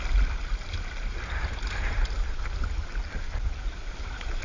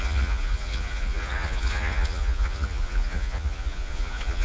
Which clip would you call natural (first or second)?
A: first